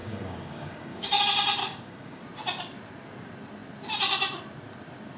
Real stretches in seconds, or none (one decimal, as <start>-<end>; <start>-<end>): 1.2-1.6; 2.2-5.2